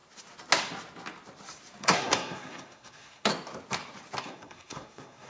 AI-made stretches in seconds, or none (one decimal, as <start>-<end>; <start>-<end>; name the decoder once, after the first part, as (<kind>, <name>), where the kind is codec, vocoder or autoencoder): 1.8-3.3 (codec, SNAC); 4.2-5.3